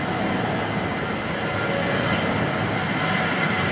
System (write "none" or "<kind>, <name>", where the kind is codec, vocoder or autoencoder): none